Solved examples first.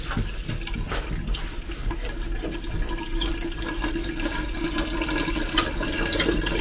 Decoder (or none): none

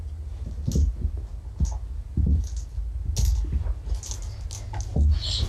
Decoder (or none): none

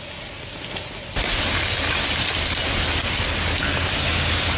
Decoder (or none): none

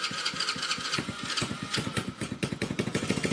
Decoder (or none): vocoder, Vocos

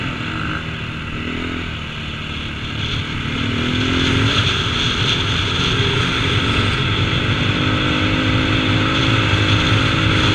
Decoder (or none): none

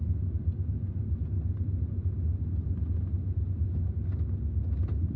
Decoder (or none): none